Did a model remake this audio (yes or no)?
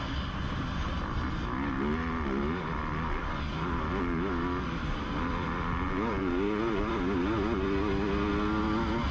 no